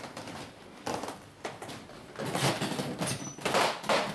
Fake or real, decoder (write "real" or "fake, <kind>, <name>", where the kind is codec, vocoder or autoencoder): real